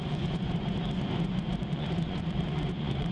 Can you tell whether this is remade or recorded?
remade